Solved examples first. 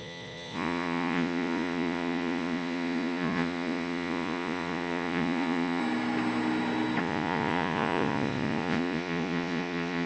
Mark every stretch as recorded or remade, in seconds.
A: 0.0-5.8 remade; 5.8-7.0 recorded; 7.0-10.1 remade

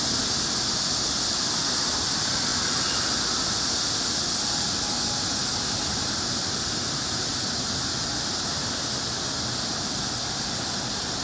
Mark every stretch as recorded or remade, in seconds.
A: 0.0-11.2 recorded

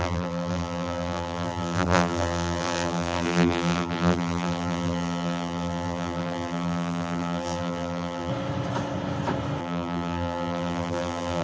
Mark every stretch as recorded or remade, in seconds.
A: 0.0-8.3 remade; 8.3-9.6 recorded; 9.6-11.4 remade

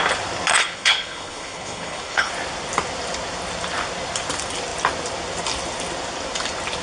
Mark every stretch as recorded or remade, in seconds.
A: 0.0-0.5 recorded; 0.5-2.3 remade; 2.3-6.8 recorded